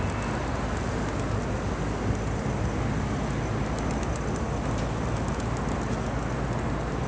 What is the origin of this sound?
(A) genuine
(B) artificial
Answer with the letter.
A